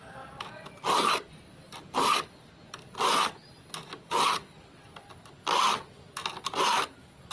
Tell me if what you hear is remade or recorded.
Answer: recorded